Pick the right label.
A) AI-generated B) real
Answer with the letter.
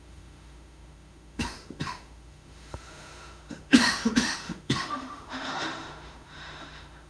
A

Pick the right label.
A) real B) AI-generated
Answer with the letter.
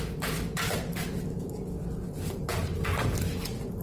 A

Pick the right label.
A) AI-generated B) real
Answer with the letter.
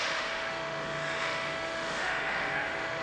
A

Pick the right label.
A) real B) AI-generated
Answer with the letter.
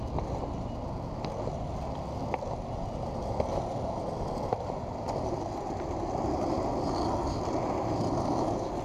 A